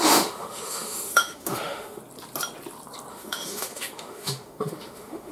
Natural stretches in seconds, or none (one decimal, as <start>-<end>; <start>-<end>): 2.0-3.1